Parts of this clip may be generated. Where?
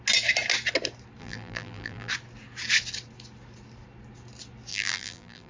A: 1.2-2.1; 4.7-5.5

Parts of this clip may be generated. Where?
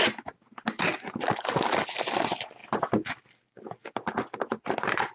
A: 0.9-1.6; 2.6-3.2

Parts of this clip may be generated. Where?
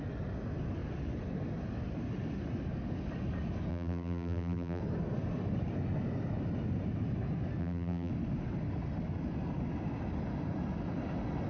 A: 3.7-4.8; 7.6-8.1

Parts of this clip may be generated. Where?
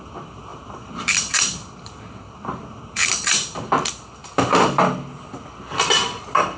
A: 0.5-3.6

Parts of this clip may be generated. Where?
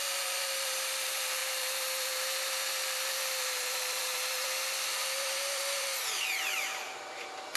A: 0.0-7.6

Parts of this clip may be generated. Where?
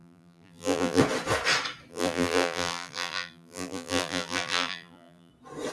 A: 0.0-1.0; 1.9-5.3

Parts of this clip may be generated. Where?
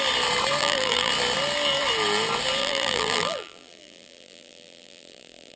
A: 0.6-1.1; 2.6-5.6